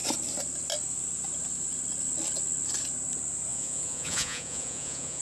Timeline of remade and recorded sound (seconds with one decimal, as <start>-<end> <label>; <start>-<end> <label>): 0.0-3.5 recorded; 3.5-5.2 remade